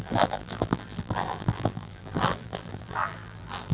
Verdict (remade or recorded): remade